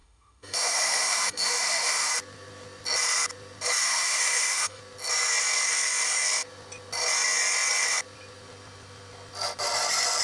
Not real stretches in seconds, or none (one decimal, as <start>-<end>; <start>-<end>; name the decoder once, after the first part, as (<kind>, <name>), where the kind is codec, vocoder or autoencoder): 0.0-2.1 (autoencoder, DAC-VAE); 3.8-4.8